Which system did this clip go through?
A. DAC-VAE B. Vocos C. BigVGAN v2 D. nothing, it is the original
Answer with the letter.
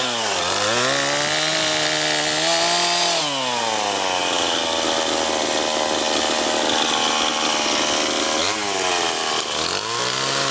D